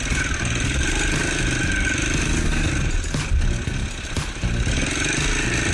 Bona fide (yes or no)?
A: yes